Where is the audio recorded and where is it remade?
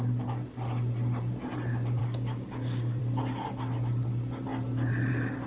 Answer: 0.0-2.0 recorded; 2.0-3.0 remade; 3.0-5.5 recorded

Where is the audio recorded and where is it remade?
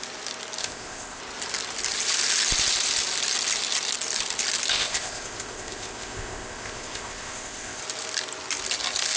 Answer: 0.0-0.6 recorded; 0.6-1.2 remade; 1.2-4.7 recorded; 4.7-7.8 remade; 7.8-9.2 recorded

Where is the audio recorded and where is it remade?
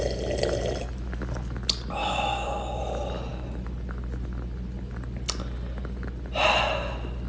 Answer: 0.0-2.0 recorded; 2.0-2.8 remade; 2.8-7.3 recorded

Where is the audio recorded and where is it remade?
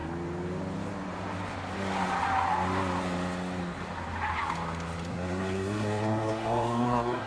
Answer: 0.0-5.1 recorded; 5.1-7.3 remade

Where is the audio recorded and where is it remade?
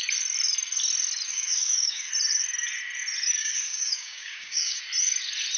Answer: 0.0-1.3 recorded; 1.3-2.1 remade; 2.1-3.4 recorded; 3.4-4.8 remade; 4.8-5.6 recorded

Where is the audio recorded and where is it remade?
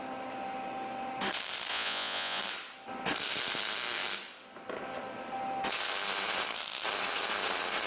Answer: 0.0-1.7 recorded; 1.7-2.4 remade; 2.4-7.9 recorded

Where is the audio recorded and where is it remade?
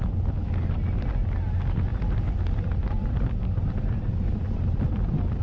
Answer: 0.0-5.4 recorded